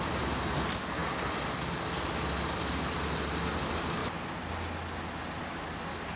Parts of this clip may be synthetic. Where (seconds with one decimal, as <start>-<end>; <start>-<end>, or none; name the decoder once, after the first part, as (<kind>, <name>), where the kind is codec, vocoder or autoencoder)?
4.0-4.5 (vocoder, BigVGAN v2)